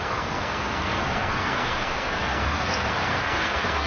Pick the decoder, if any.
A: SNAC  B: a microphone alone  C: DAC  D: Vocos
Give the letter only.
A